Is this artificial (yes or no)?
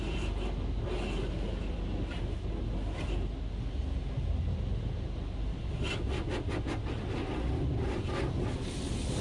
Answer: no